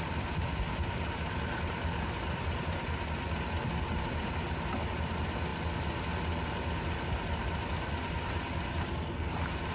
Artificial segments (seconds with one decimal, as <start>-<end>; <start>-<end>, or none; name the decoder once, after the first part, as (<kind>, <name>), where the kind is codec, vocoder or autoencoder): none